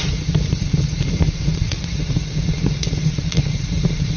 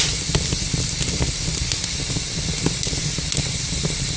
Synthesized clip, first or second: first